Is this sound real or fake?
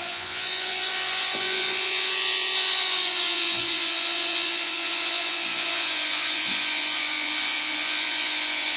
fake